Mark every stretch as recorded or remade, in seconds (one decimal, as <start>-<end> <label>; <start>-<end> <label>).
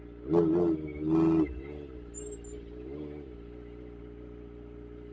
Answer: 0.0-5.1 recorded